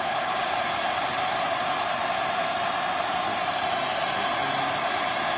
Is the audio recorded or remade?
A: recorded